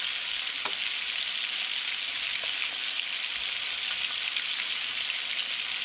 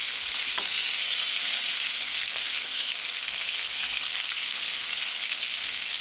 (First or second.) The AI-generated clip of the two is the second